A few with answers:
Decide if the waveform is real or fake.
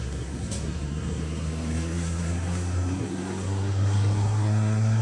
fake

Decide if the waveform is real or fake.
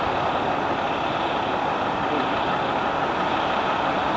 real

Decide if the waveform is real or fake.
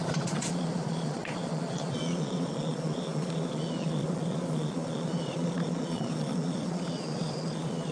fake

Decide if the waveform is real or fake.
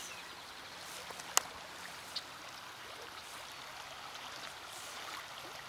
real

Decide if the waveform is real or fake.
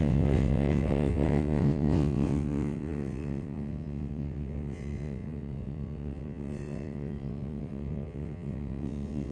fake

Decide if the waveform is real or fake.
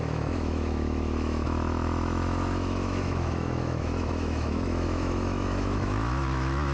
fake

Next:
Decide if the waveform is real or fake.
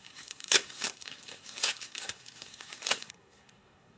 fake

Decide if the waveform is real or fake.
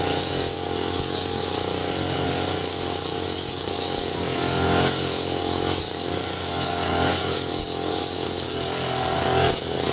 fake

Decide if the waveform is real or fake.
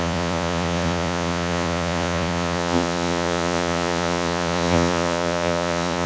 fake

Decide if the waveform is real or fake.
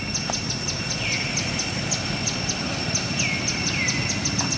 real